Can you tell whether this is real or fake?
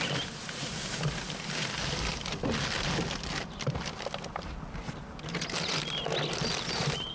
real